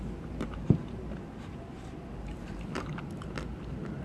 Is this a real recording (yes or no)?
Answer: yes